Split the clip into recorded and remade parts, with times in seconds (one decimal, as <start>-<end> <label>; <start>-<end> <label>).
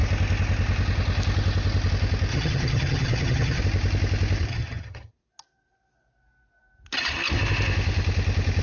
0.0-2.3 recorded; 2.3-3.6 remade; 3.6-4.5 recorded; 4.5-5.1 remade; 5.1-8.6 recorded